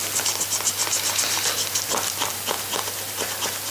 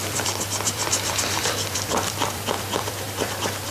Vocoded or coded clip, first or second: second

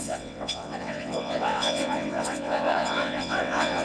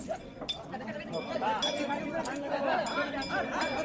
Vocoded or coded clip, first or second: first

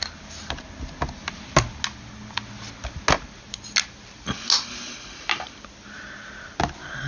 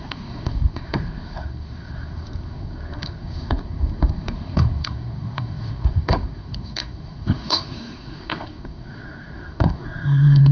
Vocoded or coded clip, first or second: second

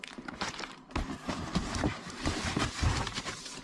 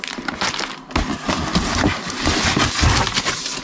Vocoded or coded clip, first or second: first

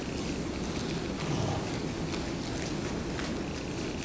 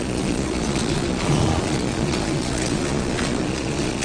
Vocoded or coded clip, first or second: second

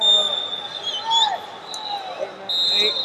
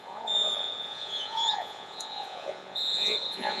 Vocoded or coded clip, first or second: second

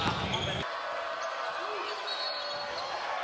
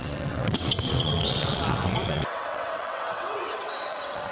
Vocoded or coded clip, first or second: second